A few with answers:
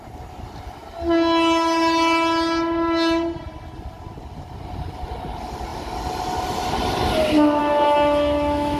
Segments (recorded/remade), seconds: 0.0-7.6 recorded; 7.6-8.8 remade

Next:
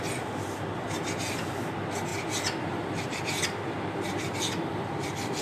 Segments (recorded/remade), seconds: 0.0-5.4 recorded

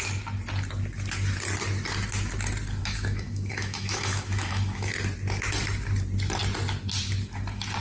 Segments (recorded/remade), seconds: 0.0-2.8 recorded; 2.8-4.9 remade; 4.9-7.8 recorded

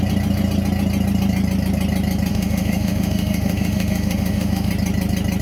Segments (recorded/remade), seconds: 0.0-2.3 recorded; 2.3-4.7 remade; 4.7-5.4 recorded